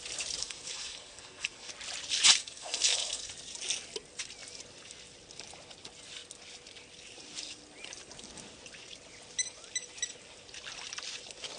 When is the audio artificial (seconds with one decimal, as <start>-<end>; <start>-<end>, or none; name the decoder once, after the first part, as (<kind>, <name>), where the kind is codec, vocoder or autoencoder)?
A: 0.4-1.7 (codec, SNAC); 2.4-3.3